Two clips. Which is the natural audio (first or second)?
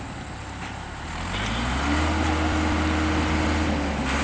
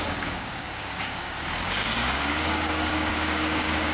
first